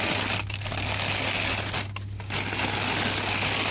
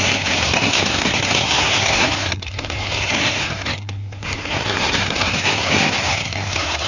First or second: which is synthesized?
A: second